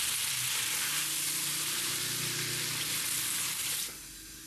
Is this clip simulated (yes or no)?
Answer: no